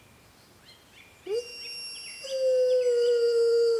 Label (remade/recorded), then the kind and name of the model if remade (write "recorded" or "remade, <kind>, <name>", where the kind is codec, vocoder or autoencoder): recorded